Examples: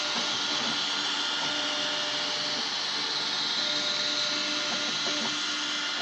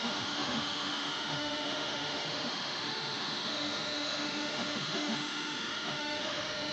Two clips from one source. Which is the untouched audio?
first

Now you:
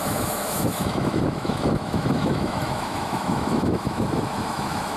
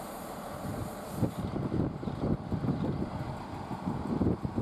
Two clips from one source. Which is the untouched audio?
second